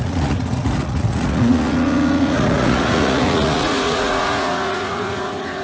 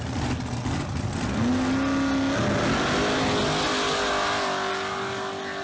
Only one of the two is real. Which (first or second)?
second